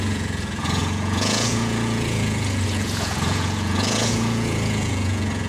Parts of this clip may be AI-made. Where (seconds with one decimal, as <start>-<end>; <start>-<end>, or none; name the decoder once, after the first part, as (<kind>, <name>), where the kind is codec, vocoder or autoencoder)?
0.0-5.5 (vocoder, Vocos)